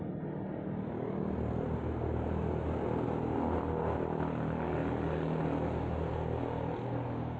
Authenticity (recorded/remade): recorded